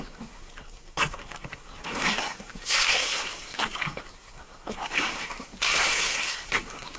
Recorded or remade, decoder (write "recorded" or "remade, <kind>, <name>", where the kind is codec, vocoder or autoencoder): remade, codec, SNAC